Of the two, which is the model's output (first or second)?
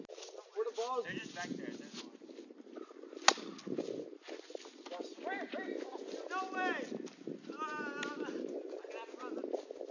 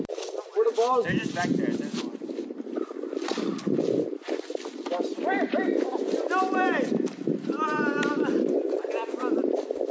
second